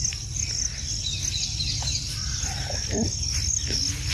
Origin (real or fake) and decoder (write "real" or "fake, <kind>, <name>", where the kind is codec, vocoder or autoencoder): real